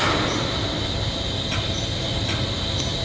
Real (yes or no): yes